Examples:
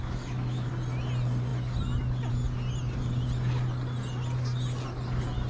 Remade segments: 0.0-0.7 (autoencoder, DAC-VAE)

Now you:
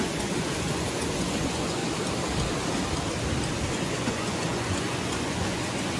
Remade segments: 0.0-1.8 (vocoder, Vocos); 3.7-6.0

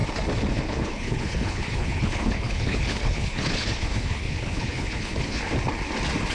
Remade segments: 0.5-5.4 (codec, HILCodec)

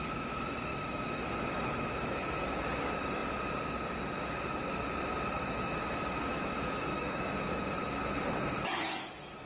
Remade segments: 0.7-2.6 (autoencoder, DAC-VAE); 6.3-9.1

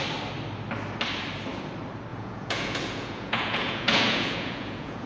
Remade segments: 2.1-5.1 (vocoder, Vocos)

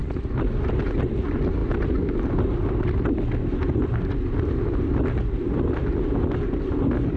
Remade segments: none

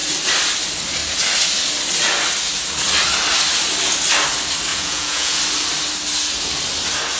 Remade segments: 4.7-5.4 (vocoder, Vocos)